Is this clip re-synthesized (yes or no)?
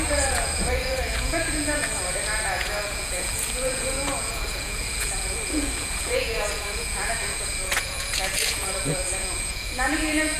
yes